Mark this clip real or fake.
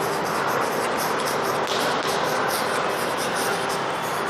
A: real